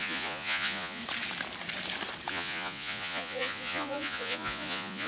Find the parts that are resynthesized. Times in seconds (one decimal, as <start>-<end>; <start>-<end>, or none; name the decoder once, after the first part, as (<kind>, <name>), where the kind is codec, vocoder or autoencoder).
0.0-1.0 (vocoder, Vocos); 2.3-5.1